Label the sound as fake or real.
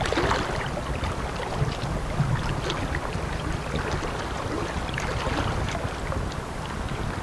real